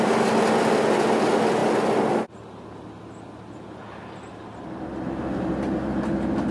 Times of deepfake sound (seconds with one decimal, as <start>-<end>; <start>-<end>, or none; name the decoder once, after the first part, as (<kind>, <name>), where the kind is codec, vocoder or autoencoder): none